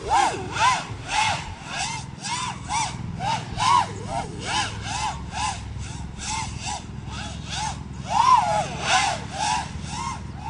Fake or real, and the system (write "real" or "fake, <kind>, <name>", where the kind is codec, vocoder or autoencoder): real